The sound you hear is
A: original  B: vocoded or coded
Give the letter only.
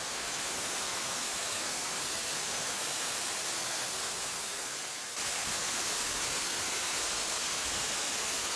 B